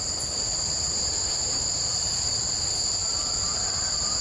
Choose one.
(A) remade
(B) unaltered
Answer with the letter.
B